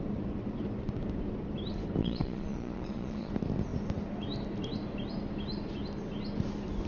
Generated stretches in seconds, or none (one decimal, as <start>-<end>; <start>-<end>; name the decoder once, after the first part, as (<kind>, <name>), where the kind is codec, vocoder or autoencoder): 2.0-3.3 (vocoder, Vocos)